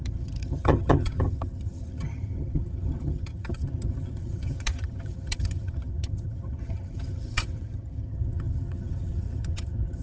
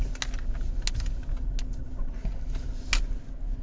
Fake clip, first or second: first